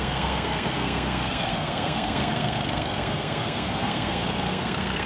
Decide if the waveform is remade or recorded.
remade